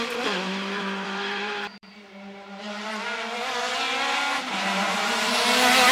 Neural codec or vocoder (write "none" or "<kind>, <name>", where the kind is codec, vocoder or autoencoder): vocoder, BigVGAN v2